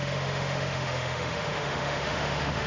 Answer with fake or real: fake